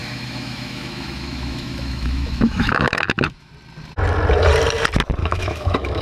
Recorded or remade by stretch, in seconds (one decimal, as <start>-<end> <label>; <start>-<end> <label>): 0.0-3.5 remade; 3.5-5.2 recorded; 5.2-6.0 remade